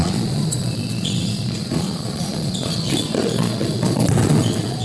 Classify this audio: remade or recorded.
remade